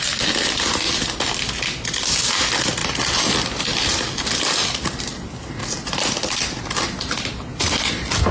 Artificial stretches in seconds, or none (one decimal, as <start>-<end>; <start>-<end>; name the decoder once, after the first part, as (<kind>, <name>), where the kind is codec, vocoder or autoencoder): none